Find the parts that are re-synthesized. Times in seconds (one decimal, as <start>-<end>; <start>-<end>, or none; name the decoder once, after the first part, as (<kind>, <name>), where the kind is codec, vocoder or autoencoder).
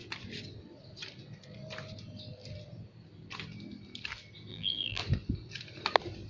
4.5-5.0 (vocoder, BigVGAN v2)